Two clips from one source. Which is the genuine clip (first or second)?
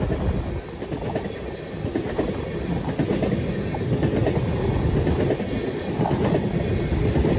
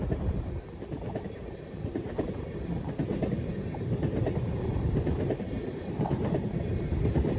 first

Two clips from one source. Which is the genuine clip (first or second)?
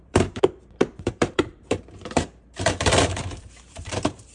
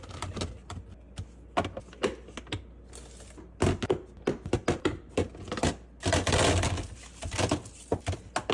second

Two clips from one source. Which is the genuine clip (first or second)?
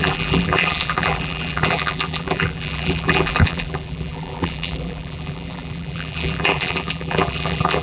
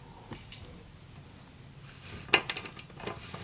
second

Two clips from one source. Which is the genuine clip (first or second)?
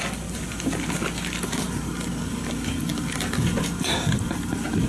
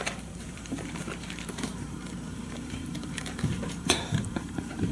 first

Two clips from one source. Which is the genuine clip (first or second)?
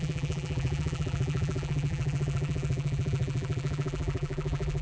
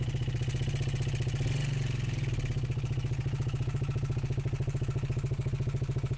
second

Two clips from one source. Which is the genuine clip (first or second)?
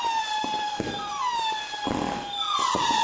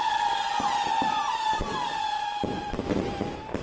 first